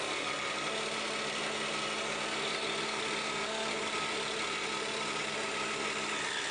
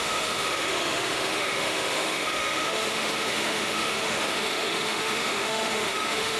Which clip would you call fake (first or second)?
second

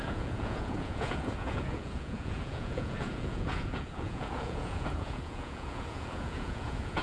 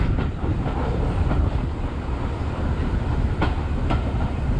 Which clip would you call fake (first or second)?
first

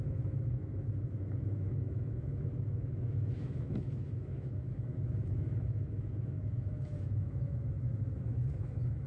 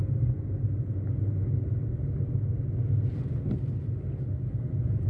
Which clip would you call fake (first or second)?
first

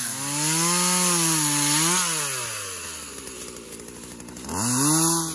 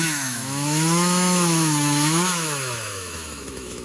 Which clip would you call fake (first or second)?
second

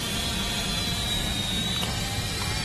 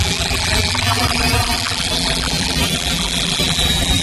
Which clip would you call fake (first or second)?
second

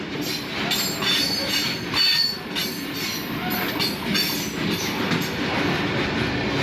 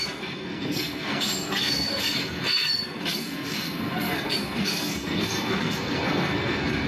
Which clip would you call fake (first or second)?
second